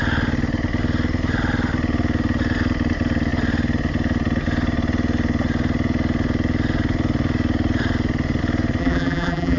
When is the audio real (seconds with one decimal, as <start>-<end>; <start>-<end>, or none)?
0.0-8.8